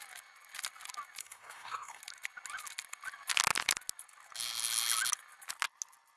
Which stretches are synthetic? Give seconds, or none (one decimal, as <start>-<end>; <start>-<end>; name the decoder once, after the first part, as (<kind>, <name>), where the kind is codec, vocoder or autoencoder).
1.2-2.0 (codec, SNAC)